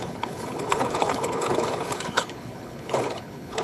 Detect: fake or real fake